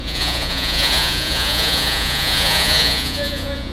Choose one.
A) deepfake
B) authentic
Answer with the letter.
A